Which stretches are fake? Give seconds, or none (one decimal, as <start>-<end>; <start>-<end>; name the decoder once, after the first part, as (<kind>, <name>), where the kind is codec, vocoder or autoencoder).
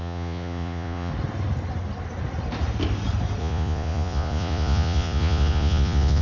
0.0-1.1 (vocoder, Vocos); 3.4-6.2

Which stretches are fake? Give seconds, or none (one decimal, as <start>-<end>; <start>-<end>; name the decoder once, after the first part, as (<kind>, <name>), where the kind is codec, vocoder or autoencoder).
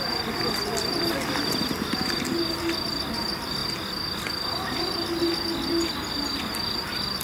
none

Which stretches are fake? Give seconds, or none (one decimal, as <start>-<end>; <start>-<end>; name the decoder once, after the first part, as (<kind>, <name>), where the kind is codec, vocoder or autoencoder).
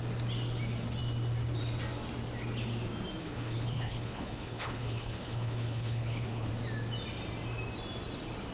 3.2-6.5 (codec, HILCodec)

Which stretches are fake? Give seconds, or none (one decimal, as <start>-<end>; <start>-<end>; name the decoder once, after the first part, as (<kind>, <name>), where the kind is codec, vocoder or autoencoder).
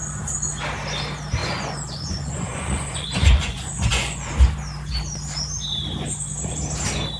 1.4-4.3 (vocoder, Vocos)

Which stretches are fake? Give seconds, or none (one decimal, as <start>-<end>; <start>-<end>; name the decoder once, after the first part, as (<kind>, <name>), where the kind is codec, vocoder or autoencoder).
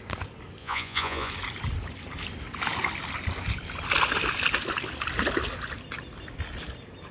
0.6-1.3 (vocoder, Vocos)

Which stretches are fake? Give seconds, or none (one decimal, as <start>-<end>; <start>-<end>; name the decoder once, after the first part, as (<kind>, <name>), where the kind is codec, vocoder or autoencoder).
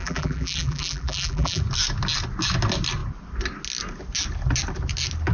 0.0-1.6 (vocoder, BigVGAN v2)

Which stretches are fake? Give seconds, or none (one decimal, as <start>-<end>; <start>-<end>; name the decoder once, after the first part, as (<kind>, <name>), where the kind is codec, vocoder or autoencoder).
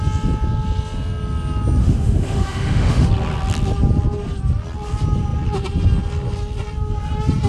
1.8-3.1 (autoencoder, DAC-VAE)